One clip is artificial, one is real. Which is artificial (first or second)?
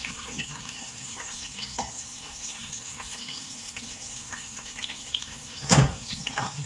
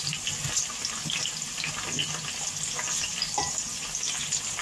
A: first